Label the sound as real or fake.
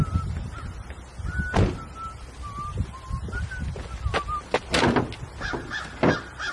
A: real